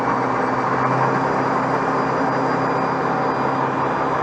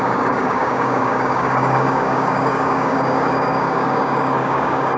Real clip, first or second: first